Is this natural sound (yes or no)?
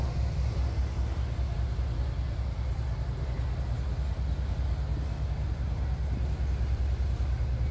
yes